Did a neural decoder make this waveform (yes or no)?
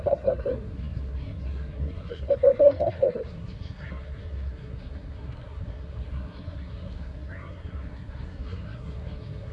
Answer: yes